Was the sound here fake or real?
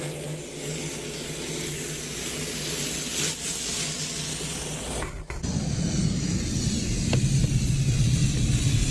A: real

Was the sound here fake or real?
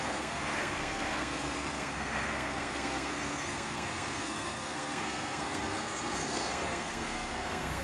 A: fake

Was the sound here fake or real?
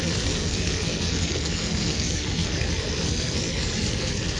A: fake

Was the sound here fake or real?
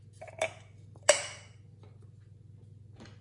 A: real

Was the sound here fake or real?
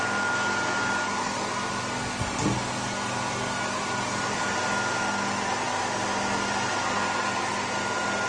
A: real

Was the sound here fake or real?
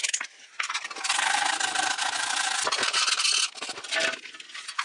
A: real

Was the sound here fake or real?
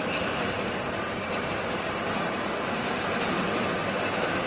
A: real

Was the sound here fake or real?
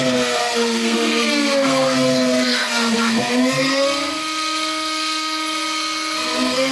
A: fake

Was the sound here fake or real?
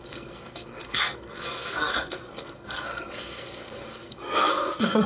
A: fake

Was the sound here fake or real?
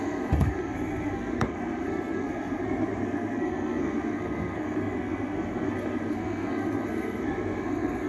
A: fake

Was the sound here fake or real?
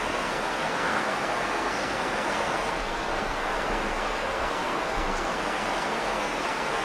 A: fake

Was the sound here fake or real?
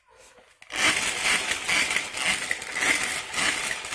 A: real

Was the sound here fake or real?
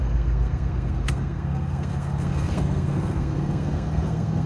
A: fake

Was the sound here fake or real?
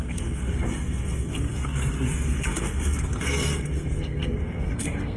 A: fake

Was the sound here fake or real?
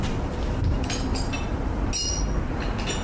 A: real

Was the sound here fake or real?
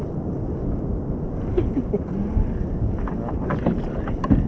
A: real